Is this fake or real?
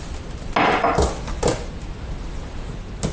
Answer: real